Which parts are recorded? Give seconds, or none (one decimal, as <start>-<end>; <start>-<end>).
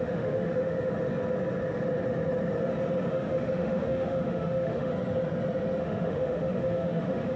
0.9-3.1; 4.9-5.8